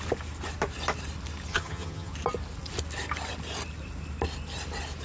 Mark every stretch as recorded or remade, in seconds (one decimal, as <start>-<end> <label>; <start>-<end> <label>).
0.0-1.5 recorded; 1.5-2.1 remade; 2.1-5.0 recorded

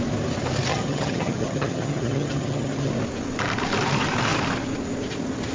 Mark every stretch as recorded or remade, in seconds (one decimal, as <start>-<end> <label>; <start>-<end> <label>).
0.0-0.7 recorded; 0.7-2.9 remade; 2.9-5.5 recorded

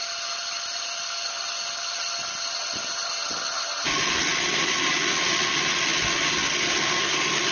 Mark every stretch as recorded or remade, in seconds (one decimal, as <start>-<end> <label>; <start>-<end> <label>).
0.0-7.5 recorded

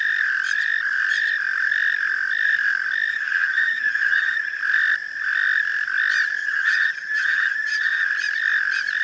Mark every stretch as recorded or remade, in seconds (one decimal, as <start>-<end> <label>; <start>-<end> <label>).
0.0-3.1 recorded; 3.1-4.6 remade; 4.6-6.4 recorded; 6.4-8.1 remade; 8.1-9.0 recorded

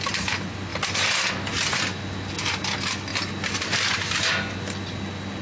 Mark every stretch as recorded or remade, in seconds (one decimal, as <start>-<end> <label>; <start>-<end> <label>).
0.0-5.4 recorded

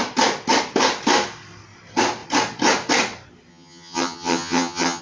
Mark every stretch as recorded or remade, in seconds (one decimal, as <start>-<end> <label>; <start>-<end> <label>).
0.0-3.5 recorded; 3.5-5.0 remade

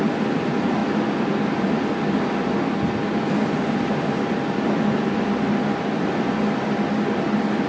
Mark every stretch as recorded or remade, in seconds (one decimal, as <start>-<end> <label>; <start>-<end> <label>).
0.0-7.7 recorded

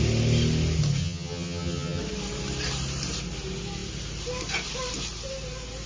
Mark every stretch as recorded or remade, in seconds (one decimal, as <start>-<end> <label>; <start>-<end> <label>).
0.0-1.0 recorded; 1.0-2.0 remade; 2.0-5.9 recorded